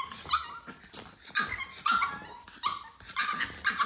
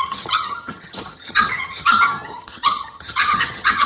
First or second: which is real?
first